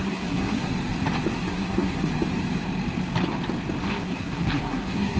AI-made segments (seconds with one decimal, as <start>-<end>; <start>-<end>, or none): 0.0-0.7; 1.5-2.1; 3.8-5.2